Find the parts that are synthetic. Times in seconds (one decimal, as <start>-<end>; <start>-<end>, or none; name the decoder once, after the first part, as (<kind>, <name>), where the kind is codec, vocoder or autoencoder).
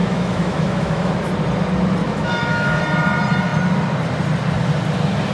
0.0-1.1 (autoencoder, DAC-VAE); 2.0-2.8